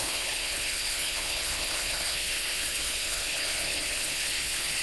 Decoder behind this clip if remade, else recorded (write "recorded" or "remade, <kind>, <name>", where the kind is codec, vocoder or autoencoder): remade, codec, HILCodec